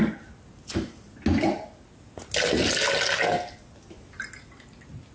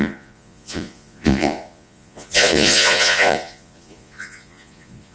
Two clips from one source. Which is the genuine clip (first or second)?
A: first